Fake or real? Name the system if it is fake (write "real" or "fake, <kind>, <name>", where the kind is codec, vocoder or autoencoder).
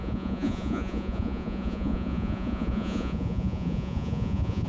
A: fake, vocoder, Vocos